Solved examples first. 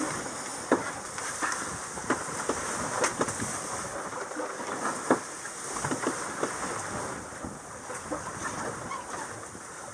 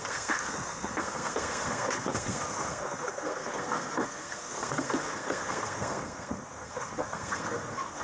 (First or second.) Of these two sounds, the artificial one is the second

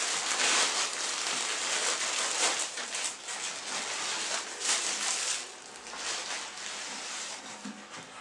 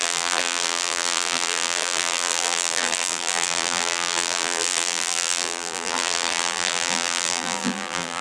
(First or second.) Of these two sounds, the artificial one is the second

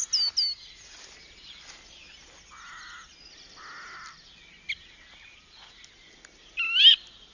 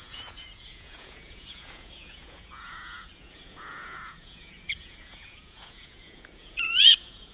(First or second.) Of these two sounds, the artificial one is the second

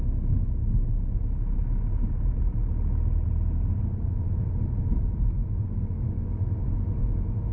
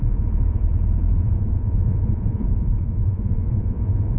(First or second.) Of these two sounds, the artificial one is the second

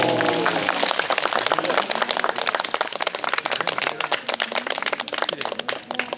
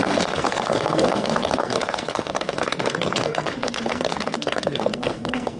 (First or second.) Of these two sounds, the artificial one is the second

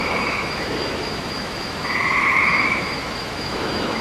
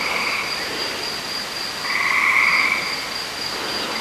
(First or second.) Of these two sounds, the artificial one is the first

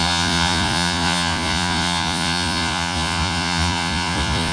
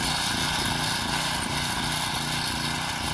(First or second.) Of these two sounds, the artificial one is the first